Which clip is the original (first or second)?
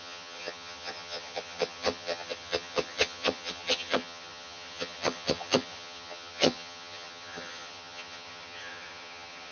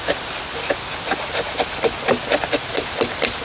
second